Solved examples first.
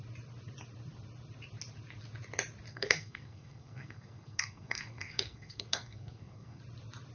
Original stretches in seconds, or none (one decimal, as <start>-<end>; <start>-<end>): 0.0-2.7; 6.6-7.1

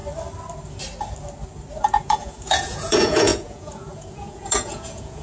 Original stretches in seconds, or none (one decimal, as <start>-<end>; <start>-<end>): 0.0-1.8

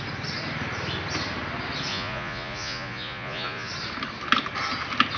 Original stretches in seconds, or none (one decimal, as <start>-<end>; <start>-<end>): 0.0-1.9; 3.7-5.2

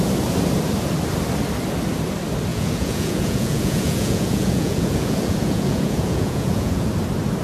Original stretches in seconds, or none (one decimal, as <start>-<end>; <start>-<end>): 0.0-2.5; 6.9-7.4